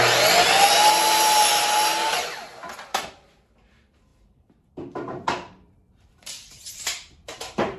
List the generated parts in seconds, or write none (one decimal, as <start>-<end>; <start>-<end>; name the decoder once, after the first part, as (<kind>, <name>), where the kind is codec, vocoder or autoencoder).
4.1-7.8 (vocoder, BigVGAN v2)